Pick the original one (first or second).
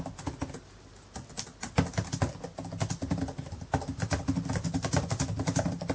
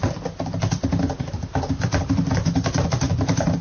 first